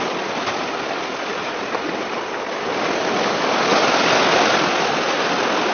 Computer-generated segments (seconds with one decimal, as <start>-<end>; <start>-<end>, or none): none

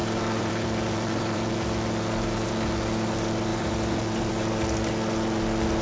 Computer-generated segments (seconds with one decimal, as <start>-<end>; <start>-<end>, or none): 0.0-1.5; 3.5-4.5

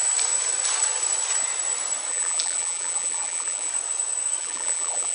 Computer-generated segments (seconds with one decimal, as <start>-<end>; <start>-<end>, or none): 2.1-3.7; 4.4-5.1

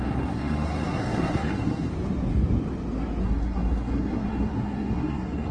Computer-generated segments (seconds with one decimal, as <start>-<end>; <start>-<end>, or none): 0.0-1.9; 3.2-5.5

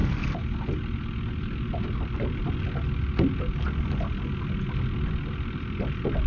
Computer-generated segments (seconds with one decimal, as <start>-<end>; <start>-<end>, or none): none